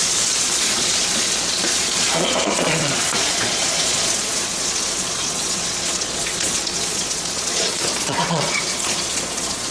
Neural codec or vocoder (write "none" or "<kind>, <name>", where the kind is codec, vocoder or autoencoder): vocoder, Vocos